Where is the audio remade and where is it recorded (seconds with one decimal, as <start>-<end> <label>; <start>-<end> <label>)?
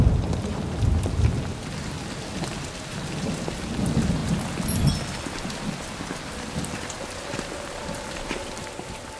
0.0-9.2 recorded